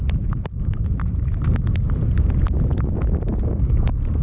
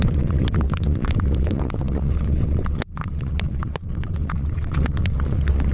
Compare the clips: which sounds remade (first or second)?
second